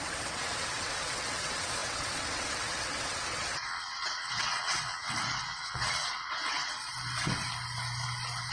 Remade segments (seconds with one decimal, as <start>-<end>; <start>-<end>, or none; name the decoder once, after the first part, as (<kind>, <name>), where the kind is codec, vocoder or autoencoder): 0.0-6.8 (vocoder, WaveNeXt)

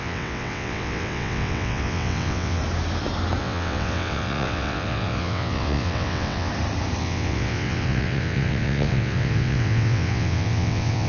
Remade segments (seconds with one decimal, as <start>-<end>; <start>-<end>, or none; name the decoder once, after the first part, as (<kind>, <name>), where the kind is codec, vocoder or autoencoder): 0.0-2.6 (vocoder, WaveNeXt); 3.4-6.5; 7.0-11.1

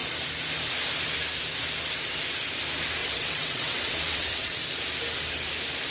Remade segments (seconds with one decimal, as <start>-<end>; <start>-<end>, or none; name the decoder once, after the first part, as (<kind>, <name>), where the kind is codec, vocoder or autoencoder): 3.0-4.6 (vocoder, WaveNeXt)

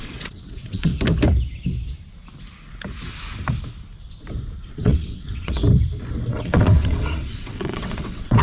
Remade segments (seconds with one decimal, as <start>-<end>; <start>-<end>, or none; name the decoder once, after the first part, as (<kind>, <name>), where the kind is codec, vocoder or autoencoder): 0.0-0.9 (vocoder, WaveNeXt); 4.7-5.6; 6.3-8.4

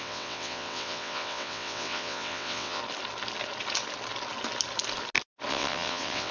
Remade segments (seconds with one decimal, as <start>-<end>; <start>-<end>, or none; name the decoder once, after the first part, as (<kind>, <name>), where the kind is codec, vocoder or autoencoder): 0.0-2.8 (vocoder, WaveNeXt); 5.5-6.3

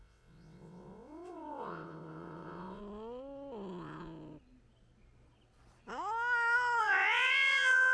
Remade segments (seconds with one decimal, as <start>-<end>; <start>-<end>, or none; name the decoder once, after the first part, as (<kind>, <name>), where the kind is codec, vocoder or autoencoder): 0.0-2.8 (vocoder, WaveNeXt); 6.8-7.9

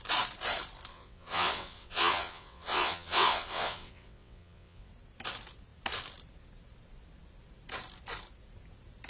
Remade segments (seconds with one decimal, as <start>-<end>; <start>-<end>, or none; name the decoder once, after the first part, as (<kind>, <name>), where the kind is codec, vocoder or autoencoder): 0.9-4.9 (vocoder, WaveNeXt)